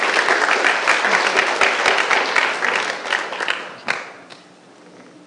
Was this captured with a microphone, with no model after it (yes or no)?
yes